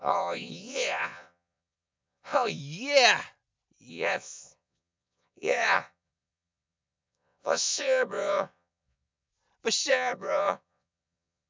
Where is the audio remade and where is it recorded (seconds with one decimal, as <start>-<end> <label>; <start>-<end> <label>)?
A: 0.0-2.6 remade; 2.6-3.9 recorded; 3.9-9.3 remade; 9.3-9.9 recorded; 9.9-11.5 remade

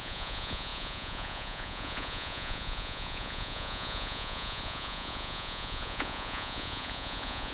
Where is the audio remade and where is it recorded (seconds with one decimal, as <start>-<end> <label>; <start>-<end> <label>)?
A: 0.0-7.5 remade

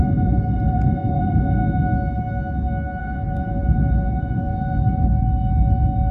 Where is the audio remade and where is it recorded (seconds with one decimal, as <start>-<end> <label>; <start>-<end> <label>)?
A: 0.0-1.6 remade; 1.6-3.0 recorded; 3.0-6.1 remade

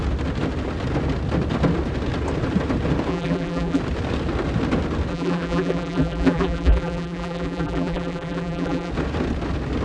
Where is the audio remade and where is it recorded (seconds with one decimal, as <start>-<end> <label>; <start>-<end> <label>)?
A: 0.0-3.1 recorded; 3.1-3.8 remade; 3.8-5.1 recorded; 5.1-8.9 remade; 8.9-9.8 recorded